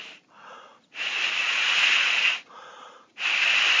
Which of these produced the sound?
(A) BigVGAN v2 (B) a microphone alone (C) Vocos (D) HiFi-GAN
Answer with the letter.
B